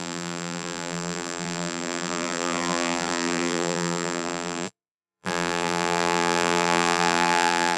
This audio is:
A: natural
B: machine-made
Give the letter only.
B